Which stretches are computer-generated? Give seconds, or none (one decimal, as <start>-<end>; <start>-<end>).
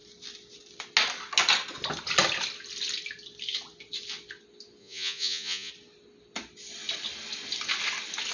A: 4.8-5.7